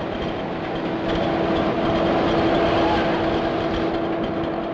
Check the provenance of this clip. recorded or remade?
recorded